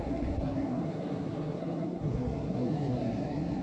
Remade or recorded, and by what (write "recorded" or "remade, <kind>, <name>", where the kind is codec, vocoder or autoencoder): remade, codec, SNAC